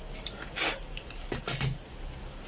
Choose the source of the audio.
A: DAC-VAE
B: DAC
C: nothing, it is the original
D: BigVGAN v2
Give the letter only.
C